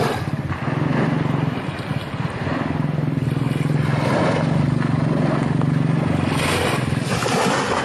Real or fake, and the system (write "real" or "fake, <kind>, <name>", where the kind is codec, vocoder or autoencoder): real